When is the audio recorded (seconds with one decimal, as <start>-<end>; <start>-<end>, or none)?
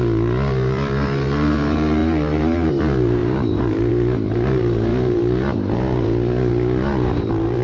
none